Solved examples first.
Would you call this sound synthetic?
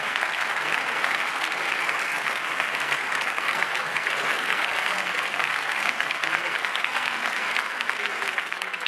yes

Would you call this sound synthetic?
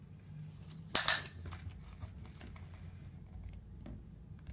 no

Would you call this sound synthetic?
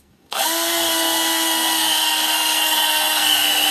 yes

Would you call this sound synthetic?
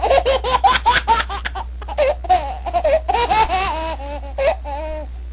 no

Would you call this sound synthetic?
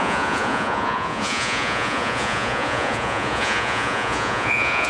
yes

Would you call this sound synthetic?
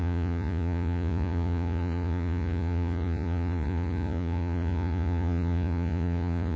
yes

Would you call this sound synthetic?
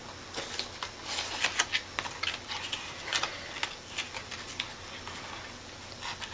no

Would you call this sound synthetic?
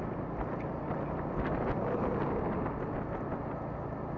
no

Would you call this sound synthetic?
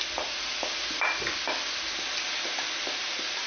no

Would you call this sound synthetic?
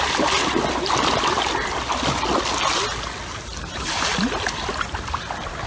no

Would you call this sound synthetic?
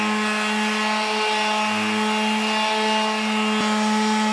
no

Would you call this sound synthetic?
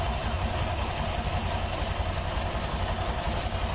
no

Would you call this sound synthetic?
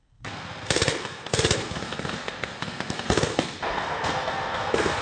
yes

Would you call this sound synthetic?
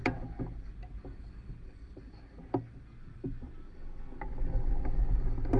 no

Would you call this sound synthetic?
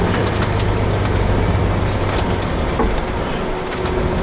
no